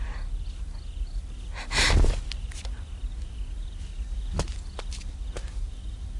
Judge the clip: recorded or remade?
recorded